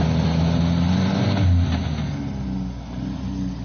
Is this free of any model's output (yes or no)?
yes